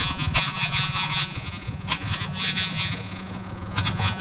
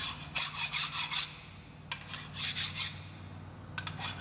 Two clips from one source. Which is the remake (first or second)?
first